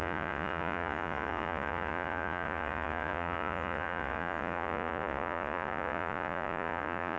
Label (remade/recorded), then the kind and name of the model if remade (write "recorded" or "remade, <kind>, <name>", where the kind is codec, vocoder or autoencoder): remade, vocoder, Vocos